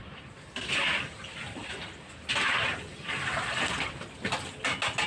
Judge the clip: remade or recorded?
recorded